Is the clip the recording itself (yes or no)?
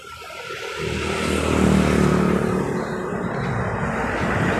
yes